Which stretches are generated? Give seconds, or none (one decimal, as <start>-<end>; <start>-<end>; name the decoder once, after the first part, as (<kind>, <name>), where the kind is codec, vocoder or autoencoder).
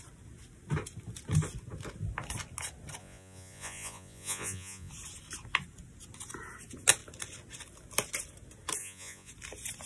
3.0-4.9 (vocoder, Vocos); 8.8-9.3